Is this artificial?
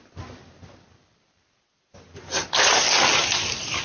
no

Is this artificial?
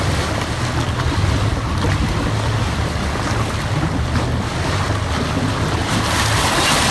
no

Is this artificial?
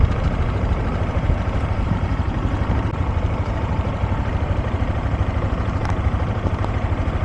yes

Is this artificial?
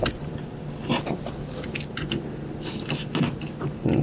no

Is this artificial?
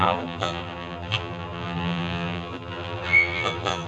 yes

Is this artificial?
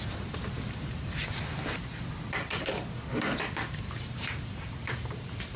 yes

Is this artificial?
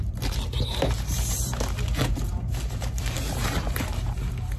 yes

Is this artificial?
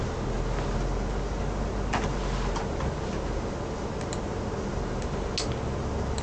no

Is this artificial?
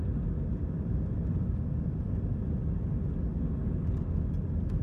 no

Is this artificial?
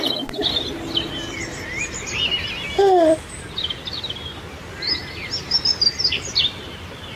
no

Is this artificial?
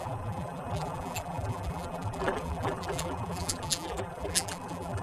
yes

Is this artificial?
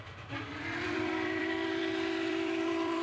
yes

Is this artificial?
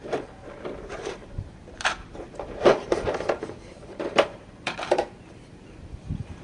yes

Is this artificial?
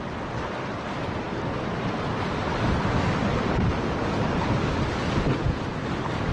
no